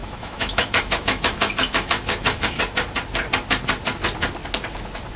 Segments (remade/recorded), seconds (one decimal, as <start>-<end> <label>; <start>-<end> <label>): 0.0-2.6 remade; 2.6-5.2 recorded